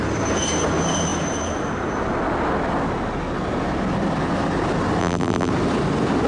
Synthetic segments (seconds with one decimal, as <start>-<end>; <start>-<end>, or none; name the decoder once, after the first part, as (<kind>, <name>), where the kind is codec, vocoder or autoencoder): 5.0-5.5 (vocoder, BigVGAN v2)